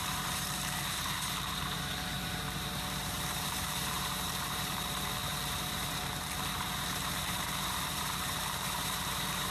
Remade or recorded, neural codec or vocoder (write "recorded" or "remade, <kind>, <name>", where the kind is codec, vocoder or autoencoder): remade, vocoder, BigVGAN v2